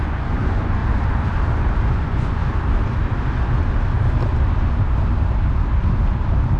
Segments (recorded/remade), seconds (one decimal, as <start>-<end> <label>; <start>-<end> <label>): 0.0-0.8 remade; 0.8-1.9 recorded; 1.9-2.4 remade; 2.4-6.6 recorded